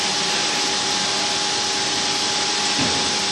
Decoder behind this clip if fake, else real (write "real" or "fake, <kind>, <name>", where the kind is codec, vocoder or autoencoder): real